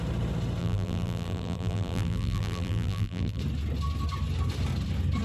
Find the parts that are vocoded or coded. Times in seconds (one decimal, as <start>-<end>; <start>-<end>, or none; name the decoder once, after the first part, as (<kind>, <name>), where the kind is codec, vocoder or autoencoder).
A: 0.6-3.4 (vocoder, BigVGAN v2)